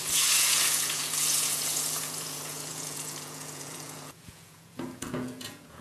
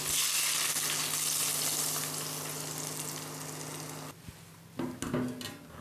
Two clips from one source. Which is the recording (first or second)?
second